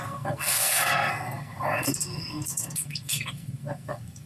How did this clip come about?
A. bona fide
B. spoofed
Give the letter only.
B